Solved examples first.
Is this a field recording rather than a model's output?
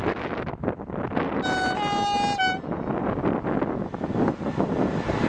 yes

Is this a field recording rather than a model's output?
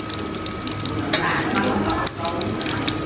yes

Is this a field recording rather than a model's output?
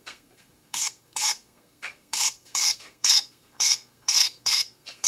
no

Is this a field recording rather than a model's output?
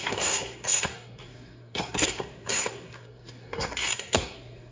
no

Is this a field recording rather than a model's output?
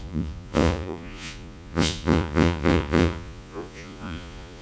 no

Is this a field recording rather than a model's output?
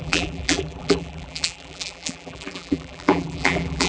no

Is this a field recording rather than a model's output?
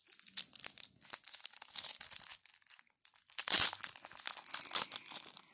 yes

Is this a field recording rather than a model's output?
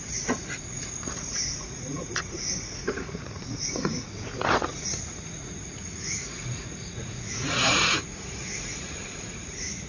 no